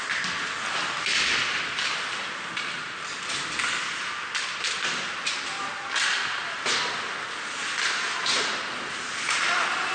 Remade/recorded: recorded